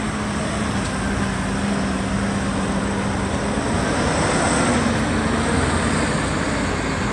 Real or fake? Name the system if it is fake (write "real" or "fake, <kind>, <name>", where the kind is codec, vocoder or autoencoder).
real